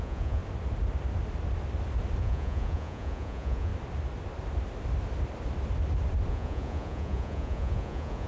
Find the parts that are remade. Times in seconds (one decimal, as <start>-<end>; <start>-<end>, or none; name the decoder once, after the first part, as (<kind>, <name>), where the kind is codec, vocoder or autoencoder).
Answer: 0.0-0.4 (vocoder, Vocos); 2.2-3.7; 6.3-8.3